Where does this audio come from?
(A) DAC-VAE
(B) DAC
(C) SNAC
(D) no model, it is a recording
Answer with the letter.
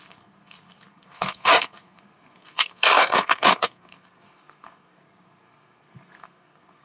C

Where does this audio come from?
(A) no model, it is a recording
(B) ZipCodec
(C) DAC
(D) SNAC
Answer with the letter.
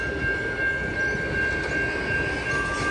A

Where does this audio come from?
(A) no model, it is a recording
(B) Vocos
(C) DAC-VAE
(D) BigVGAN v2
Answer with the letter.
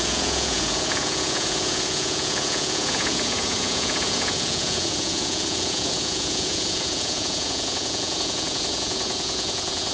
B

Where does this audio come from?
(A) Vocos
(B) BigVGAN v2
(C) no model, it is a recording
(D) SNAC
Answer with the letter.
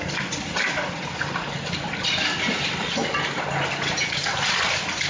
C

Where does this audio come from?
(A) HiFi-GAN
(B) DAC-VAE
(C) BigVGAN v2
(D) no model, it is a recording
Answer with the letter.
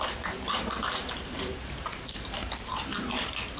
C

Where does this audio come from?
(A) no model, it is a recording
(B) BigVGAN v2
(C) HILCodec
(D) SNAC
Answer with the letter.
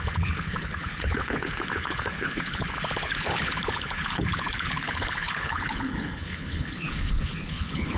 C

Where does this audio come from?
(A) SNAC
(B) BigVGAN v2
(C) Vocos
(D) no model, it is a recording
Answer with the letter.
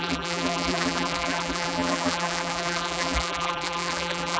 B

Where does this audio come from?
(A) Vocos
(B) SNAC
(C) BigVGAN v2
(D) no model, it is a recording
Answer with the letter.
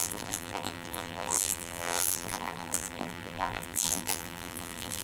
C